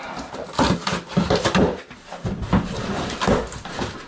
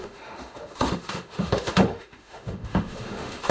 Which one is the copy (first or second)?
second